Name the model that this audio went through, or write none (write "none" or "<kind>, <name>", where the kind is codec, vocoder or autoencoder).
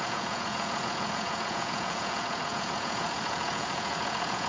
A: vocoder, Vocos